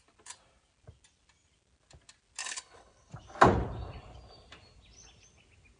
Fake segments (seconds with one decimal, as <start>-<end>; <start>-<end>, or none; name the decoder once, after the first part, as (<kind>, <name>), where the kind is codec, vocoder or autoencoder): 2.4-3.1 (codec, HILCodec)